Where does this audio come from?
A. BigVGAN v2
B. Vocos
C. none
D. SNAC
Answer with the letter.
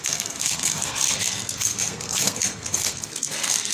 D